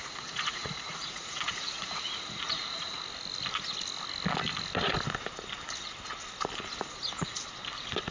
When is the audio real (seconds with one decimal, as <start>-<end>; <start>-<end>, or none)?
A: 3.0-8.1